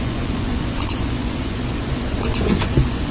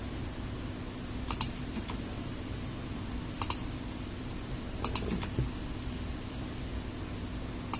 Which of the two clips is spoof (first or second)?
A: first